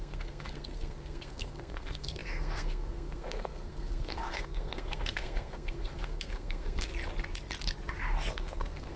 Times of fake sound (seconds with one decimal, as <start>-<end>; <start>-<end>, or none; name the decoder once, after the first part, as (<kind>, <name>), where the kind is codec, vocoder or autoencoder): 0.0-6.9 (codec, SNAC); 8.3-9.0